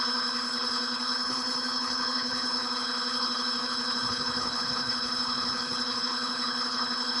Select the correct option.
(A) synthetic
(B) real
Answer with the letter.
A